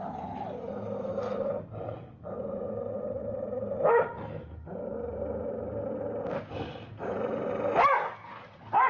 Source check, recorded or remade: recorded